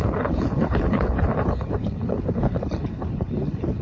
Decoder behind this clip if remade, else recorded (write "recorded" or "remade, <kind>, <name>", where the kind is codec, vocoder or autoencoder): remade, codec, HILCodec